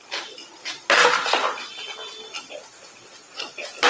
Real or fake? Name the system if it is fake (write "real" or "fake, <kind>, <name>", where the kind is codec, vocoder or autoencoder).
real